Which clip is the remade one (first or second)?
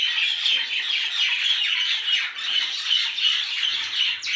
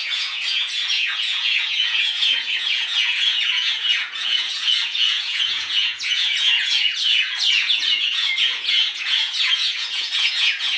second